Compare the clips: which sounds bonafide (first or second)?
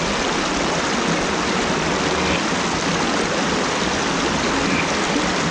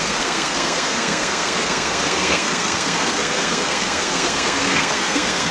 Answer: first